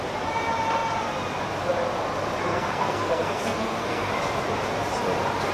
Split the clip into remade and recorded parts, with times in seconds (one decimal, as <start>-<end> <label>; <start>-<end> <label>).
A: 0.0-2.5 recorded; 2.5-4.1 remade; 4.1-5.5 recorded